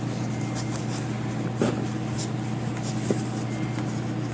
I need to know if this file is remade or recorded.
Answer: recorded